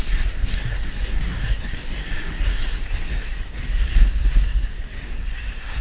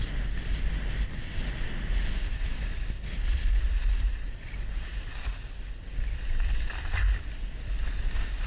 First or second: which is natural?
second